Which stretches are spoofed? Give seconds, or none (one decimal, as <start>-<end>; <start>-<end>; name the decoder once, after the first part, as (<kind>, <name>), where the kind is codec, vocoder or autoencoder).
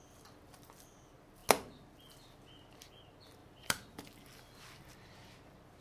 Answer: 3.4-5.1 (vocoder, BigVGAN v2)